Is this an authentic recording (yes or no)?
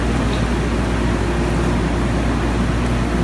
yes